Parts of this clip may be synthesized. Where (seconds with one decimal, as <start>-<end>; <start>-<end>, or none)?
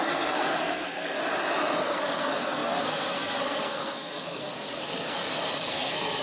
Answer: 0.0-1.2; 1.8-6.2